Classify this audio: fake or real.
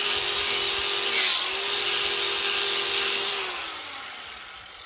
real